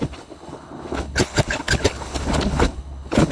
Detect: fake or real fake